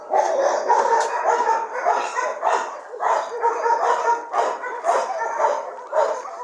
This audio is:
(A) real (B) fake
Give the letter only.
A